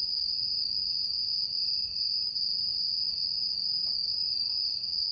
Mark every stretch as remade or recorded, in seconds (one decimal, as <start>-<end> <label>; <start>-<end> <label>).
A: 0.0-5.1 recorded